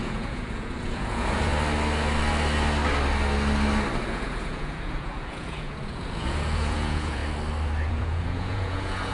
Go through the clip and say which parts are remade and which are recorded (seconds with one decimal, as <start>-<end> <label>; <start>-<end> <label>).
0.0-1.5 remade; 1.5-4.0 recorded; 4.0-7.2 remade; 7.2-7.9 recorded; 7.9-9.1 remade